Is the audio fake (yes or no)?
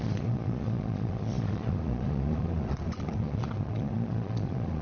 yes